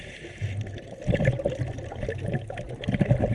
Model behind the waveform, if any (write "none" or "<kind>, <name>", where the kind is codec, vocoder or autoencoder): none